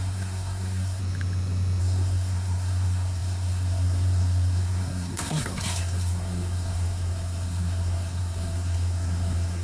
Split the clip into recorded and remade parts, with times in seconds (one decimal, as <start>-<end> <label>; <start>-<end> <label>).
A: 0.0-1.0 remade; 1.0-1.8 recorded; 1.8-9.6 remade